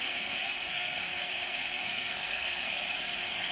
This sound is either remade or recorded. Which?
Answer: remade